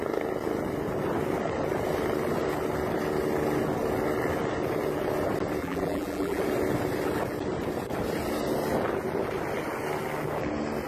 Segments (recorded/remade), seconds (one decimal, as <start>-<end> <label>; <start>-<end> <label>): 0.0-5.6 recorded; 5.6-6.4 remade; 6.4-10.9 recorded